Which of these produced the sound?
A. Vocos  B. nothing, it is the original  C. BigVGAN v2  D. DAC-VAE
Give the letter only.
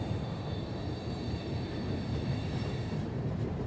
C